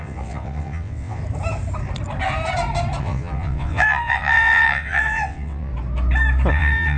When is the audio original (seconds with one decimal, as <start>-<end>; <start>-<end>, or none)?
1.2-3.0; 5.7-6.5